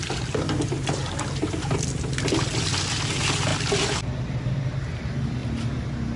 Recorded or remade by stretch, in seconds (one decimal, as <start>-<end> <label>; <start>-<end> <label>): 0.0-3.5 recorded; 3.5-4.6 remade; 4.6-6.2 recorded